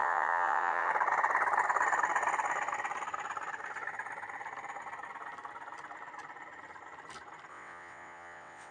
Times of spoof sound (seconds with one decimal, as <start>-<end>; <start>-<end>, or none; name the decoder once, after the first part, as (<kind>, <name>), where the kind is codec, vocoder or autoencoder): 0.0-0.9 (vocoder, WaveNeXt); 7.5-8.7